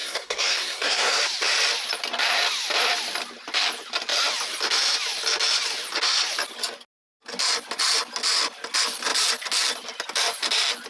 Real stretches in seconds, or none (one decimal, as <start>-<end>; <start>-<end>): 1.2-10.9